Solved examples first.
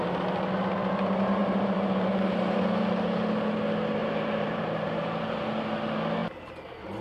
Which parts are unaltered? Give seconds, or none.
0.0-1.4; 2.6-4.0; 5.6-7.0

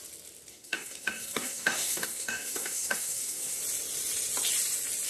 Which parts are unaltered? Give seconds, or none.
0.0-0.5; 3.6-5.1

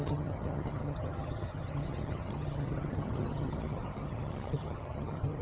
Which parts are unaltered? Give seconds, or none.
none

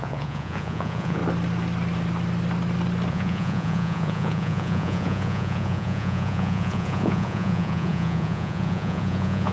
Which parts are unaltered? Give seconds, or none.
1.2-3.1

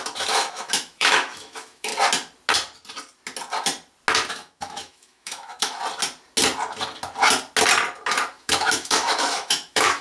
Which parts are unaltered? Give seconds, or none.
1.9-4.3; 5.8-8.3

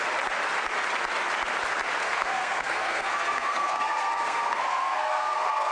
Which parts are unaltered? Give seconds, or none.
0.0-2.0